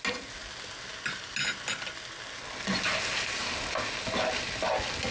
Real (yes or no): yes